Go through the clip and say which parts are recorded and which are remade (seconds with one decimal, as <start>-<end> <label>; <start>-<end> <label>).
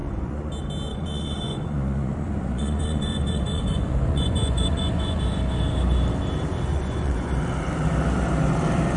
0.0-0.5 remade; 0.5-0.9 recorded; 0.9-5.2 remade; 5.2-6.7 recorded; 6.7-7.3 remade; 7.3-9.0 recorded